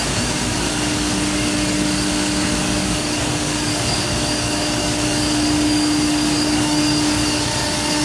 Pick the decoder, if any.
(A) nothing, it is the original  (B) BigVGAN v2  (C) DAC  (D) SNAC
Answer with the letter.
C